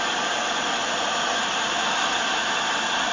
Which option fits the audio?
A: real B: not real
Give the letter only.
B